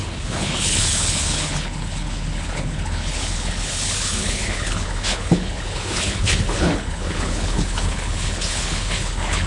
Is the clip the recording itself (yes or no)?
no